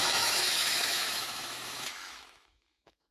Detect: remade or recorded remade